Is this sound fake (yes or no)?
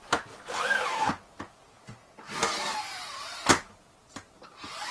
no